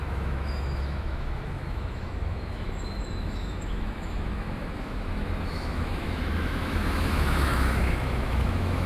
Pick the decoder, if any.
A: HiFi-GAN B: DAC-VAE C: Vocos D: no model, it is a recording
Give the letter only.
B